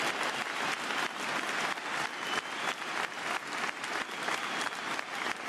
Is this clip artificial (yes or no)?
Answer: no